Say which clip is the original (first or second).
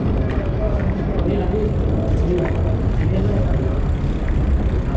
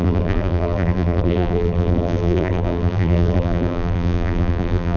first